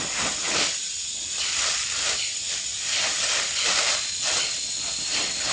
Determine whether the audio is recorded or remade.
recorded